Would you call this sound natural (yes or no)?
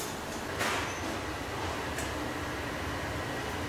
yes